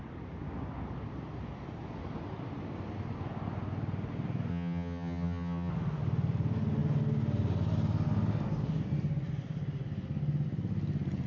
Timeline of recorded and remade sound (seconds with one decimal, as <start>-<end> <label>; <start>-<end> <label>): 0.0-4.5 recorded; 4.5-5.7 remade; 5.7-11.3 recorded